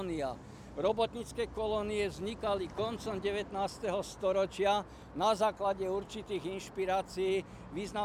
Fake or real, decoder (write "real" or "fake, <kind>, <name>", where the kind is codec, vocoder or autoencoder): real